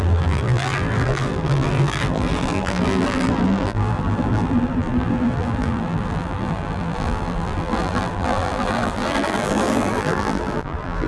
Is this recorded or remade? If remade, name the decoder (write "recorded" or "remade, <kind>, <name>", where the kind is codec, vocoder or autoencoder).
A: remade, vocoder, BigVGAN v2